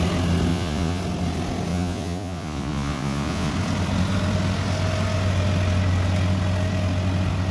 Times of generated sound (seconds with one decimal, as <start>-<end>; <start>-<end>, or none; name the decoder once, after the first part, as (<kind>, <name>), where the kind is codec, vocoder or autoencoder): 0.5-1.0 (vocoder, Vocos); 1.7-3.5